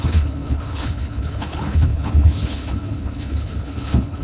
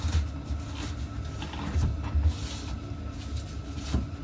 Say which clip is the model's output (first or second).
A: first